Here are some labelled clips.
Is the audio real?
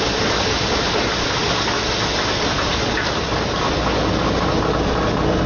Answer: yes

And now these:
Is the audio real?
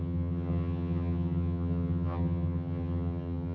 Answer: no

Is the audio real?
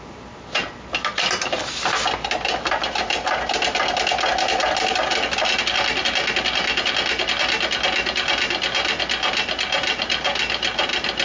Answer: yes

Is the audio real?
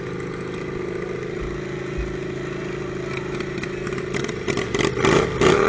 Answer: yes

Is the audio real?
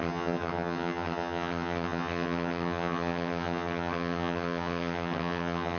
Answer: no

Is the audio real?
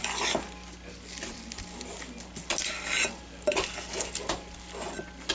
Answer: yes